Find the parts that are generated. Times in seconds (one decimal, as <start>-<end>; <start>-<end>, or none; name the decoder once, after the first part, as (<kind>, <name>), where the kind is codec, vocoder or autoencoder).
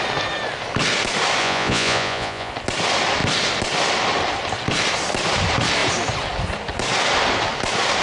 1.4-2.5 (vocoder, Vocos)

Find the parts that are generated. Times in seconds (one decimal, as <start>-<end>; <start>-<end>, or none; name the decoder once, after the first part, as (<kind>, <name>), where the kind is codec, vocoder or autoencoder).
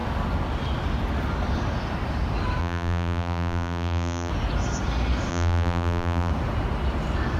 2.6-4.3 (vocoder, BigVGAN v2); 5.3-6.3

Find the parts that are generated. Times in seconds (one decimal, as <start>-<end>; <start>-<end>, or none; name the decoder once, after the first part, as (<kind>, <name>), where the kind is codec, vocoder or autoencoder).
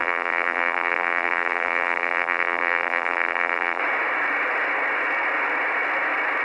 0.0-3.8 (vocoder, BigVGAN v2)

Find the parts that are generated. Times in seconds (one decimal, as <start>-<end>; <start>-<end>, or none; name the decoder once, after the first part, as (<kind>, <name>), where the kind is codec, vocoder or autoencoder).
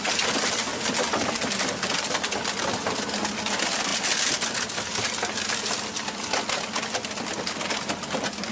none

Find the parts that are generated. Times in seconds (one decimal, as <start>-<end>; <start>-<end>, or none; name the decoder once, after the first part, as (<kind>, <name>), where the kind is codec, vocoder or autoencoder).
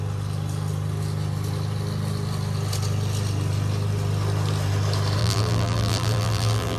5.2-6.8 (vocoder, BigVGAN v2)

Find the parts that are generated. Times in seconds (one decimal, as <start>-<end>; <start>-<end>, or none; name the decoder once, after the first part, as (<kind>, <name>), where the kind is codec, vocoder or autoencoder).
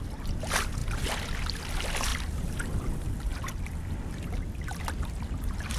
none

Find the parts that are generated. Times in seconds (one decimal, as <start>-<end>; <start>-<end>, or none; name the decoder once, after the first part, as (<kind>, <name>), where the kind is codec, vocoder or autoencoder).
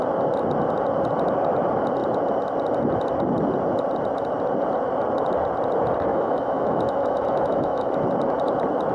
6.1-7.9 (autoencoder, DAC-VAE)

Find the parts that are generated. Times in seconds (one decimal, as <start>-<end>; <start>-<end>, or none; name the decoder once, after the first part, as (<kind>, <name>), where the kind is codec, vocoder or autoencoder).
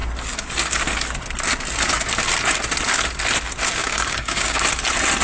3.8-4.6 (codec, DAC)